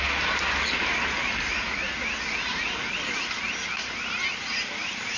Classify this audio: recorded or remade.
recorded